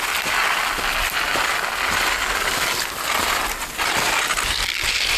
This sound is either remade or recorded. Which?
recorded